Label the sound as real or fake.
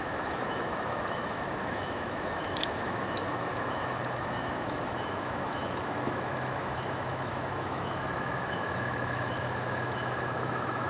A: fake